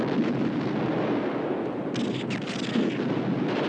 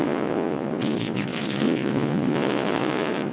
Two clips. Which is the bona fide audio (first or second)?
first